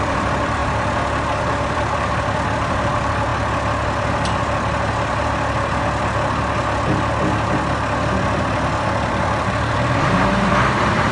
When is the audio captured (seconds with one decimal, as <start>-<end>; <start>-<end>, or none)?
0.6-1.4; 3.3-8.3